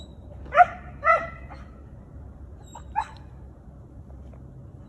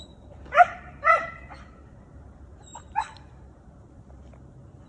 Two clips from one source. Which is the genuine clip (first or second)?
first